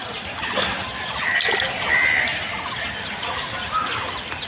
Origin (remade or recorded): recorded